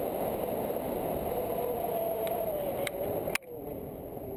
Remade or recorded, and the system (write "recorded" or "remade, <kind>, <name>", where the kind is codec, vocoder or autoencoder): recorded